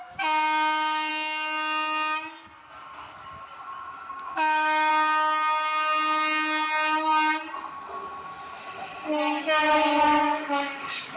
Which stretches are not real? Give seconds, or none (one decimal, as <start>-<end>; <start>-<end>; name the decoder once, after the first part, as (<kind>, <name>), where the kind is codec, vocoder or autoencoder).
0.0-1.1 (codec, DAC); 4.1-4.9; 10.2-11.2